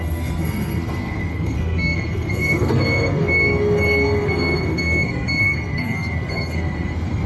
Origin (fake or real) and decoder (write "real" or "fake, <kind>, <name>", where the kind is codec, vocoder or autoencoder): fake, codec, SNAC